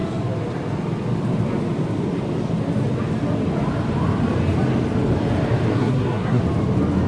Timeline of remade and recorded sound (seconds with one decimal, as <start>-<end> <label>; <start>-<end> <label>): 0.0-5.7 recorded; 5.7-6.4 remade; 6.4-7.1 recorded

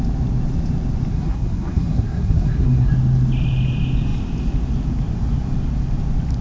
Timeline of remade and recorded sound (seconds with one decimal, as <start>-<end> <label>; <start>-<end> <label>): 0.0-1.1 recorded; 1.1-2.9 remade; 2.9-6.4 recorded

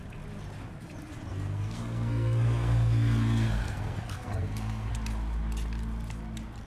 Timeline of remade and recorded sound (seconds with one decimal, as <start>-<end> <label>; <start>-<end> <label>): 0.0-1.3 recorded; 1.3-4.9 remade; 4.9-6.7 recorded

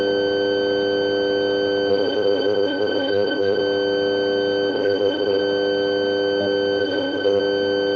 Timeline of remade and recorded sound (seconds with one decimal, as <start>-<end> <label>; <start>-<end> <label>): 0.0-1.9 recorded; 1.9-3.6 remade; 3.6-4.7 recorded; 4.7-5.4 remade; 5.4-6.8 recorded; 6.8-7.4 remade; 7.4-8.0 recorded

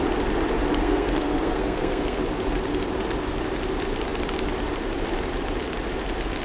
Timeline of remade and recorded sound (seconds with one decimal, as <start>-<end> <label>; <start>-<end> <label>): 0.0-0.8 recorded; 0.8-2.2 remade; 2.2-6.4 recorded

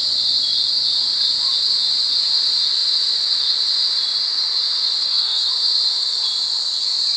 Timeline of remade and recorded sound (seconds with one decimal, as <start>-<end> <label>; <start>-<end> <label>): 0.0-5.0 recorded; 5.0-5.5 remade; 5.5-7.2 recorded

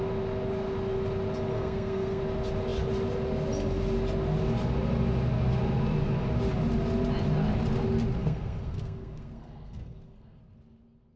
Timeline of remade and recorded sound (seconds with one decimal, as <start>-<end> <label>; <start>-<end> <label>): 0.0-1.5 recorded; 1.5-2.2 remade; 2.2-8.2 recorded; 8.2-10.4 remade; 10.4-11.2 recorded

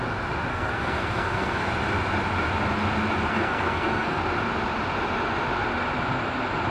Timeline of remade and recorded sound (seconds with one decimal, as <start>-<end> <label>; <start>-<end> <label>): 0.0-0.5 recorded; 0.5-1.7 remade; 1.7-3.3 recorded; 3.3-4.2 remade; 4.2-6.7 recorded